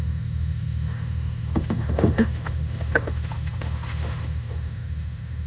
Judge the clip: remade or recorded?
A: remade